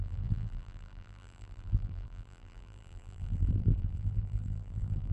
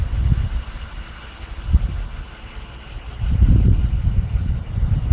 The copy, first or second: first